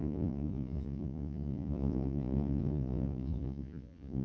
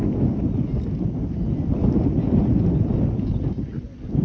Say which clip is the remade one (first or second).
first